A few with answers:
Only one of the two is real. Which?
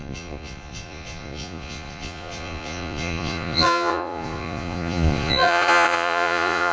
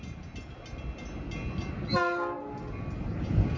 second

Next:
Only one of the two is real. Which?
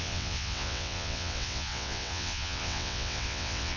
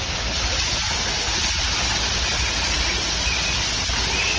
second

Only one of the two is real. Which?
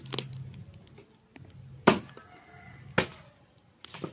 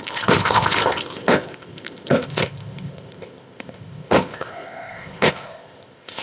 first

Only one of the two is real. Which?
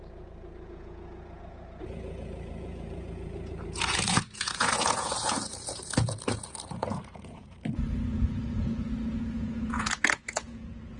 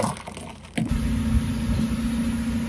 second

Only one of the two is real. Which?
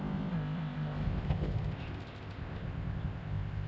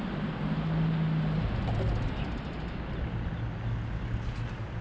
second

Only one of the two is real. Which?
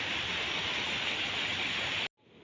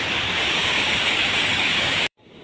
first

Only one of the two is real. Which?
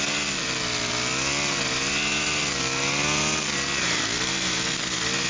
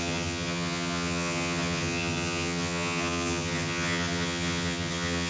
first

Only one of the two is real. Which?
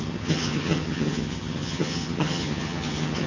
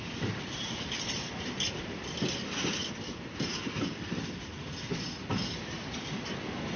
second